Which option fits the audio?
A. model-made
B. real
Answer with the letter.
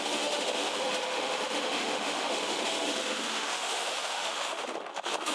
A